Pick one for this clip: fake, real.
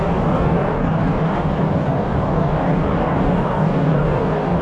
fake